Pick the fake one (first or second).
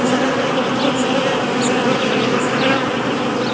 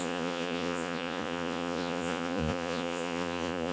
second